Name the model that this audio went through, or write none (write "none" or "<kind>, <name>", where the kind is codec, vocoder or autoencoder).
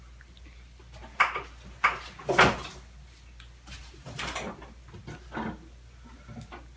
none